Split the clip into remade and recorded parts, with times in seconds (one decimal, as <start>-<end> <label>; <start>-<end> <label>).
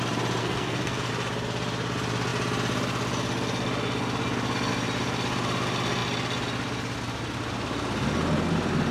0.0-0.4 recorded; 0.4-1.1 remade; 1.1-8.9 recorded